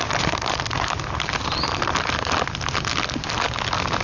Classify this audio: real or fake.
real